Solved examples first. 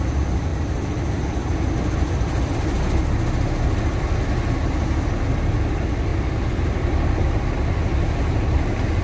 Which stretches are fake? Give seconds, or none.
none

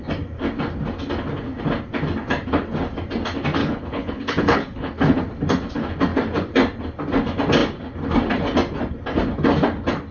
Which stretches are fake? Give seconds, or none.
3.6-5.2 (codec, HILCodec)

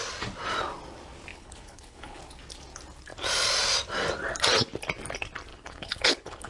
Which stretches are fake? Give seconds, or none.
1.3-2.2 (codec, HILCodec); 5.5-6.5

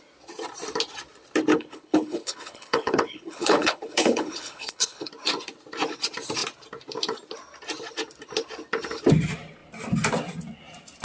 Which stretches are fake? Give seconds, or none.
1.5-5.1 (codec, HILCodec)